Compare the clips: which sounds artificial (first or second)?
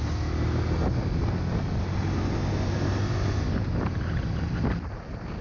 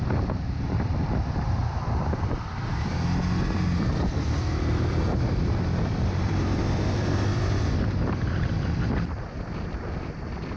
second